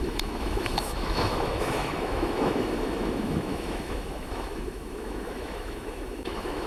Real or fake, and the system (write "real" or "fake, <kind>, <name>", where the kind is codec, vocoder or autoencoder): fake, autoencoder, DAC-VAE